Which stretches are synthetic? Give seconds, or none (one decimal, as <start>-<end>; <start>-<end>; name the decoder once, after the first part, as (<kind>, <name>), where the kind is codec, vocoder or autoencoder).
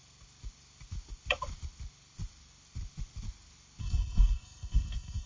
3.8-5.3 (codec, SNAC)